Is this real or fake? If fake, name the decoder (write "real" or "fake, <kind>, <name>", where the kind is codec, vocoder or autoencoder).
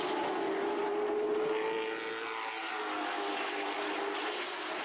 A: real